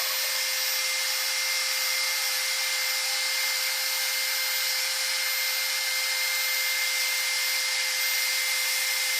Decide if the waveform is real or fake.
real